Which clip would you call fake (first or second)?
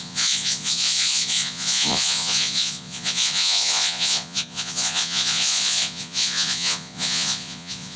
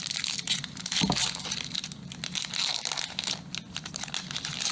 first